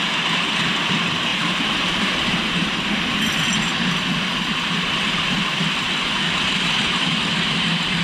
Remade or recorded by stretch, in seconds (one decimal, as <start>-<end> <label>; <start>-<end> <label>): 0.0-1.3 recorded; 1.3-3.4 remade; 3.4-8.0 recorded